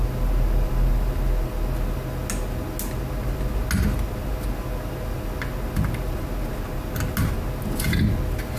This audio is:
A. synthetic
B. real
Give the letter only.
B